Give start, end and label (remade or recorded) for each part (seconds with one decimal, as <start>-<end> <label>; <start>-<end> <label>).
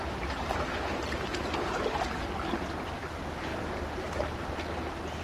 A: 0.0-1.8 remade; 1.8-3.5 recorded; 3.5-4.2 remade; 4.2-5.2 recorded